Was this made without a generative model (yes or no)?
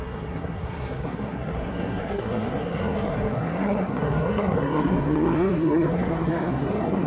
no